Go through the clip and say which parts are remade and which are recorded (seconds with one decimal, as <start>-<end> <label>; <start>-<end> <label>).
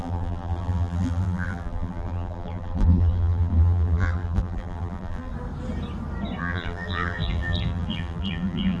0.0-5.3 remade; 5.3-6.4 recorded; 6.4-8.8 remade